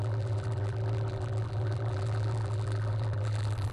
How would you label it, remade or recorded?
remade